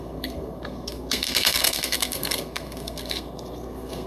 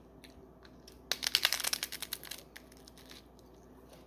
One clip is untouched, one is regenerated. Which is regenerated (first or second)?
first